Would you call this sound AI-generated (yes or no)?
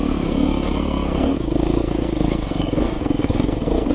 yes